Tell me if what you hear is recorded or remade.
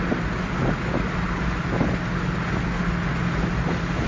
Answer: recorded